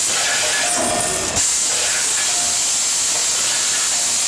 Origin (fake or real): real